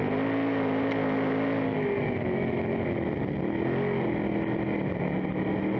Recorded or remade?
recorded